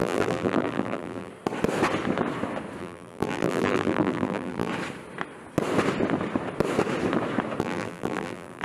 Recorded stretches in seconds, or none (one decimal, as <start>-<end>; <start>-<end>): 1.3-2.8; 4.7-7.6